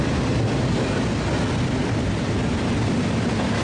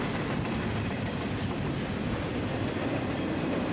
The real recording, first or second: first